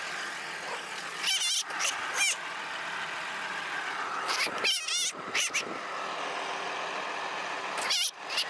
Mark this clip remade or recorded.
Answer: recorded